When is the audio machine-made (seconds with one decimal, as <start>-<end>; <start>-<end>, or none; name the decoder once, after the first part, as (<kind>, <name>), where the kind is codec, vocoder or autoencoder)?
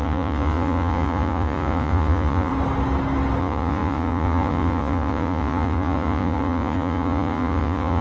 0.0-2.5 (vocoder, Vocos); 3.4-8.0